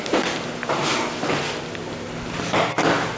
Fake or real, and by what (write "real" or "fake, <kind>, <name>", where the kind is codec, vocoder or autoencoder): real